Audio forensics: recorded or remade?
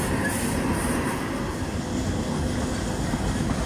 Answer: recorded